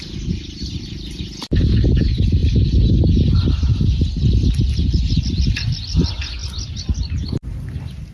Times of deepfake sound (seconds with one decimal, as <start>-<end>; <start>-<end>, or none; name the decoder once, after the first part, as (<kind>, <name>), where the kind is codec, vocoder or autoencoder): none